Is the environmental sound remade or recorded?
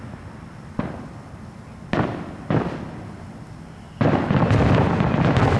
recorded